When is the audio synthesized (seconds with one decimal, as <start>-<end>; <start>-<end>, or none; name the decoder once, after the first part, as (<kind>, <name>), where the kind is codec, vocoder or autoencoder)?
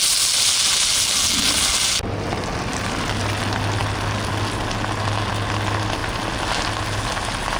none